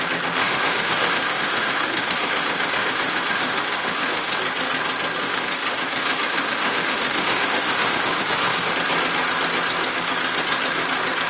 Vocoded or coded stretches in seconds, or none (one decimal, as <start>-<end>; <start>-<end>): 0.4-4.4; 5.2-8.7